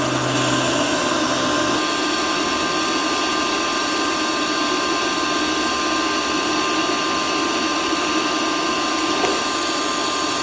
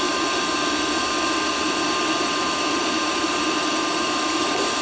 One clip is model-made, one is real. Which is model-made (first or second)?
second